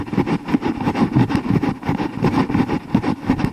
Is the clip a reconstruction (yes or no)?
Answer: no